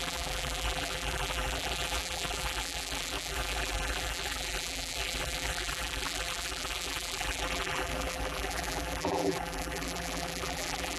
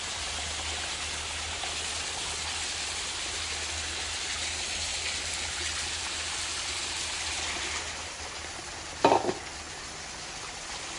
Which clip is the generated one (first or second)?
first